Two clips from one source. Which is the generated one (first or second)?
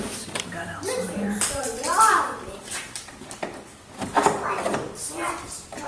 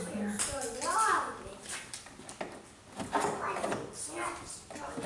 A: first